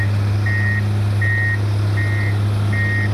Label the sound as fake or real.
real